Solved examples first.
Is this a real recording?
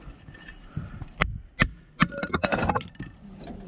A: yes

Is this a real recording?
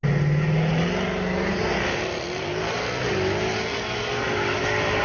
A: yes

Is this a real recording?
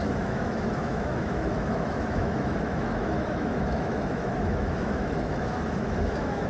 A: no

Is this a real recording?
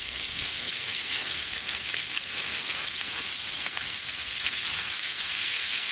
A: no